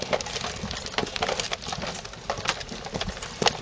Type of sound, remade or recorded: recorded